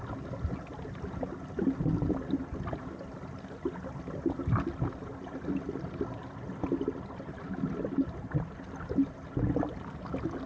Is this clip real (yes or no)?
yes